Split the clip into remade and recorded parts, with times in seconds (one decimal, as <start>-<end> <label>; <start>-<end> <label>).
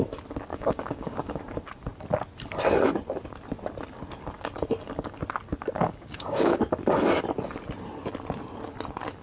0.0-0.5 recorded; 0.5-1.4 remade; 1.4-5.8 recorded; 5.8-6.6 remade; 6.6-9.2 recorded